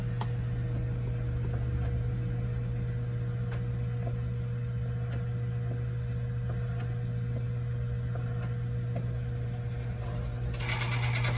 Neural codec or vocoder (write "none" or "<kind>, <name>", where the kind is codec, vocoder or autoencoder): none